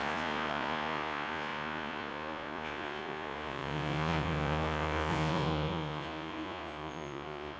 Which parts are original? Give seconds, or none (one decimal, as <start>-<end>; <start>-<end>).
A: none